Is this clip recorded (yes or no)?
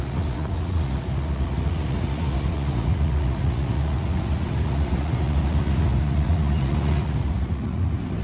no